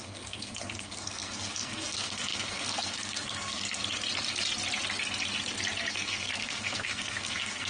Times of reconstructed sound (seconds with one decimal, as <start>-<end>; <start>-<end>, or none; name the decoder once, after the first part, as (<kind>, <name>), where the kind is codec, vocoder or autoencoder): 0.0-3.8 (codec, SNAC); 5.9-7.7